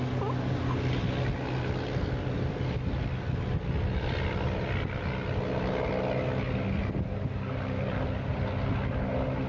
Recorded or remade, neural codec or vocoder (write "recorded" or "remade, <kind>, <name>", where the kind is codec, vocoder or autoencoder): recorded